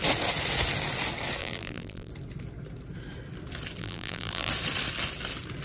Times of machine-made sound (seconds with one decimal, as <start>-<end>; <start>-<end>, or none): 1.4-2.1; 3.8-4.5

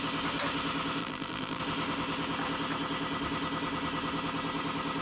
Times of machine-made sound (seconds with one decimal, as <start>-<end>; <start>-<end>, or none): 1.0-1.6